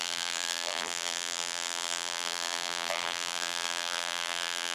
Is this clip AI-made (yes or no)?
yes